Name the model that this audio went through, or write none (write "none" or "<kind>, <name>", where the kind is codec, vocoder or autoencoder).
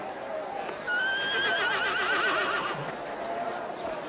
none